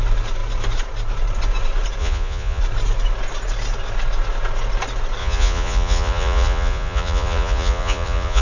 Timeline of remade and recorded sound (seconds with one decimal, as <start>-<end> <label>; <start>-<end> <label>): 0.0-2.0 recorded; 2.0-2.6 remade; 2.6-5.2 recorded; 5.2-8.4 remade